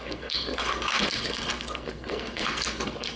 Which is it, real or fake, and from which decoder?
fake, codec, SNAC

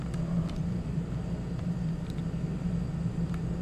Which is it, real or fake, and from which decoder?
real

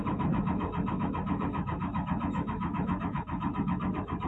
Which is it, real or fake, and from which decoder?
fake, autoencoder, DAC-VAE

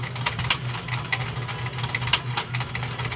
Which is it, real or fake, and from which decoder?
real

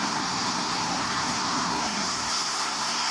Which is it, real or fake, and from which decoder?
fake, codec, SNAC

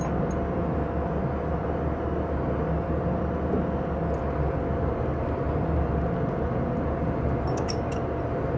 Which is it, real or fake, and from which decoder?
real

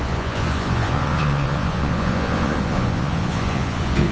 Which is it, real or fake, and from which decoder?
fake, vocoder, Vocos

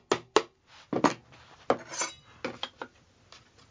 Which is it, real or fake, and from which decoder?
real